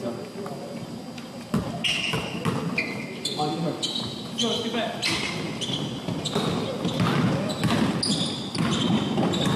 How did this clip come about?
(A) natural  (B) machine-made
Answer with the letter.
A